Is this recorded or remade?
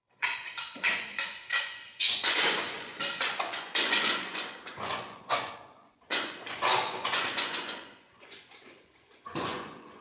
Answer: remade